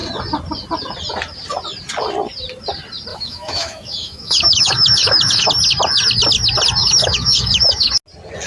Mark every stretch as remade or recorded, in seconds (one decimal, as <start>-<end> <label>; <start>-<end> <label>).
0.0-3.1 recorded; 3.1-5.5 remade; 5.5-6.8 recorded; 6.8-7.9 remade; 7.9-8.5 recorded